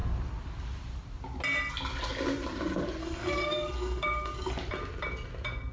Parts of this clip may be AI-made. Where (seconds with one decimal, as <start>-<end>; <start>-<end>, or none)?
3.0-4.5